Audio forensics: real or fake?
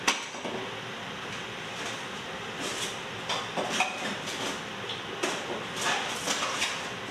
real